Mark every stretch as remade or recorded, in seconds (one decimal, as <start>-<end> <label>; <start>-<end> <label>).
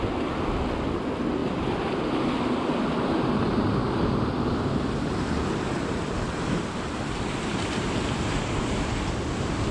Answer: 0.0-9.7 recorded